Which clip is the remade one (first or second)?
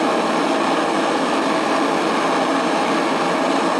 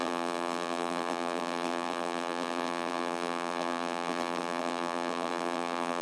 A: second